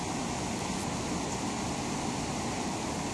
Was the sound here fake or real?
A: real